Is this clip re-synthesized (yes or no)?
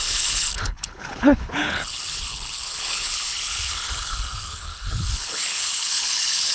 yes